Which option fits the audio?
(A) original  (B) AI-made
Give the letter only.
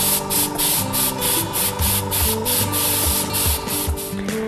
A